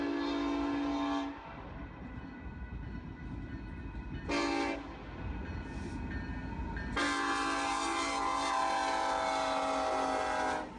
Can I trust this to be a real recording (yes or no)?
yes